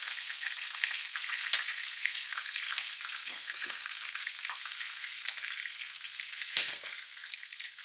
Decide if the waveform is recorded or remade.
remade